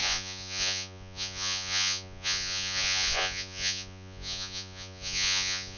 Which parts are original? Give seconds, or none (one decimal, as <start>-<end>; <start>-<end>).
none